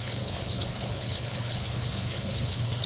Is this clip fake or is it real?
fake